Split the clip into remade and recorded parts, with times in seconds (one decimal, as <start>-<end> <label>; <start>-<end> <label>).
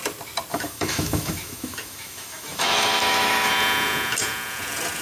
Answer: 0.0-0.5 recorded; 0.5-3.5 remade; 3.5-5.0 recorded